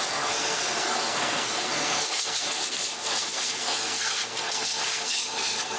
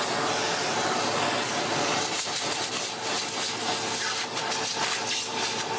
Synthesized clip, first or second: first